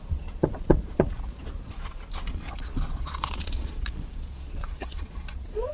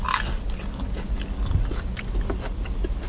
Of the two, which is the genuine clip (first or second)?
second